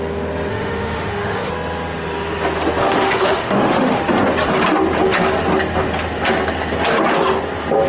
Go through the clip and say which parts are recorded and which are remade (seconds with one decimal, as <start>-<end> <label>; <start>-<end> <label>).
0.0-0.5 recorded; 0.5-1.5 remade; 1.5-2.8 recorded; 2.8-4.0 remade; 4.0-7.9 recorded